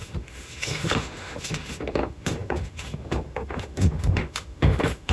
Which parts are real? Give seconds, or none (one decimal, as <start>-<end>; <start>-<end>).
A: none